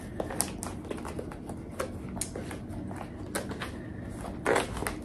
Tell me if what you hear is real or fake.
real